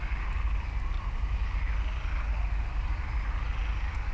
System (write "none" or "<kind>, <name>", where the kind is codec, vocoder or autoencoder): none